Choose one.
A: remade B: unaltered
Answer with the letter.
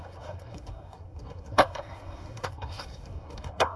A